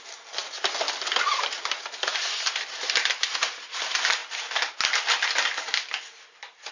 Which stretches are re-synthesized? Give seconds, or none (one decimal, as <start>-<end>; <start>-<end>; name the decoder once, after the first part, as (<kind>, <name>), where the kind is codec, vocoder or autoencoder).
none